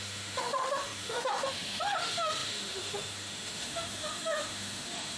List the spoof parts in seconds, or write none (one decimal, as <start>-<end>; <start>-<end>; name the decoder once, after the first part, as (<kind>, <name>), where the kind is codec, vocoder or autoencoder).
0.0-5.2 (autoencoder, DAC-VAE)